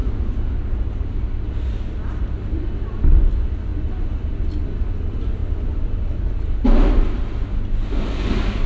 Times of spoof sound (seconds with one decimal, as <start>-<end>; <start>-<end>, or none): none